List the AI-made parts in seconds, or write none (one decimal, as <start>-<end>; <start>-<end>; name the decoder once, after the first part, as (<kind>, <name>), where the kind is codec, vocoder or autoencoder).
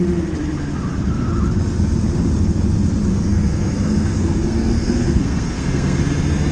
3.1-6.0 (codec, SNAC)